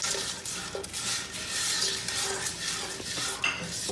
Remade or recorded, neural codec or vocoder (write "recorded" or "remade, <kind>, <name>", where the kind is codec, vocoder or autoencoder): recorded